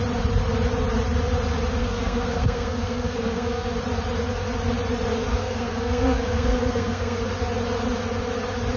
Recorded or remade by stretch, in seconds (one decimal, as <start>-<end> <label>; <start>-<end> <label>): 0.0-1.8 recorded; 1.8-3.7 remade; 3.7-5.3 recorded; 5.3-7.2 remade; 7.2-8.8 recorded

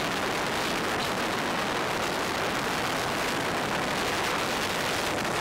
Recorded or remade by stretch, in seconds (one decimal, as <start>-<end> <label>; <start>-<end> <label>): 0.0-5.4 recorded